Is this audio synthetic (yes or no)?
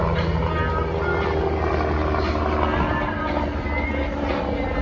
no